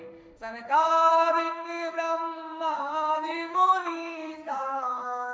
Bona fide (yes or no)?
no